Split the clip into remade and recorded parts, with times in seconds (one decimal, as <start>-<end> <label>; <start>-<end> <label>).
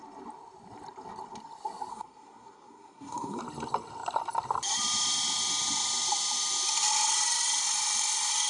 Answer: 0.0-1.9 recorded; 1.9-3.4 remade; 3.4-8.5 recorded